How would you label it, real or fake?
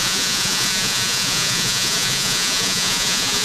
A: fake